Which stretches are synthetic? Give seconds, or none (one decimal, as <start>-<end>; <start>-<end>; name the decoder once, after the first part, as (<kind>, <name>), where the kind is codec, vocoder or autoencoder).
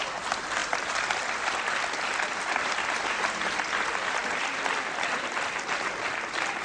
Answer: 0.6-2.7 (vocoder, BigVGAN v2); 4.2-5.5